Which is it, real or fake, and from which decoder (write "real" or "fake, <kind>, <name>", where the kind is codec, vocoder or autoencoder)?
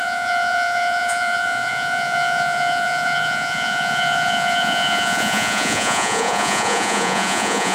fake, vocoder, Vocos